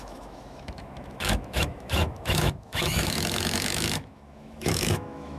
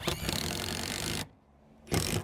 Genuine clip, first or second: second